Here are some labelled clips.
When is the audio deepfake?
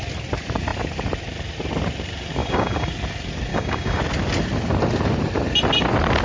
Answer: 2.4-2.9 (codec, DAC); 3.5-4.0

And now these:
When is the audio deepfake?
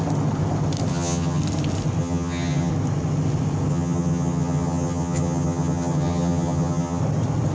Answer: 0.9-1.4 (vocoder, HiFi-GAN); 2.0-2.7; 3.7-7.0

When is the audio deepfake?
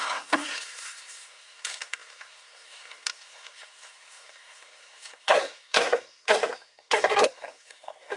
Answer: 0.0-8.2 (codec, SNAC)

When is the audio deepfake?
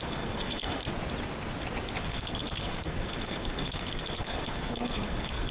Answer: 0.0-0.8 (codec, SNAC); 2.0-5.5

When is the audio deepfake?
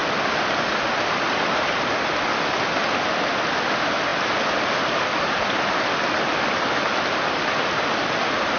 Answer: none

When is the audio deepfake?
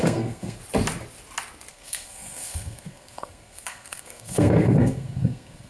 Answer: 0.0-0.6 (codec, SNAC); 1.7-5.7